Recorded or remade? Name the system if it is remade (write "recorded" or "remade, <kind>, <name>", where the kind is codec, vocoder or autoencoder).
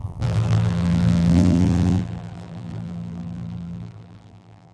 remade, vocoder, BigVGAN v2